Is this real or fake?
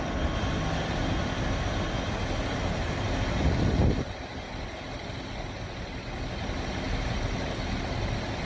real